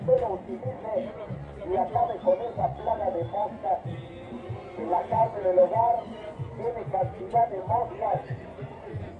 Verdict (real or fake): fake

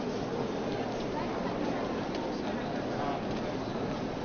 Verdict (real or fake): real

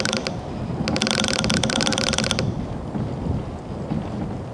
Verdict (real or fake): real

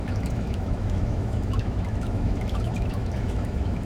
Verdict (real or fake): fake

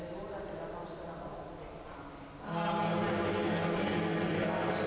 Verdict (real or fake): real